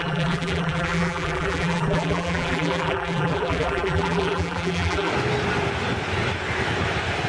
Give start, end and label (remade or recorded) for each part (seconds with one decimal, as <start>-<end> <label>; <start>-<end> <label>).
0.0-5.1 remade; 5.1-7.3 recorded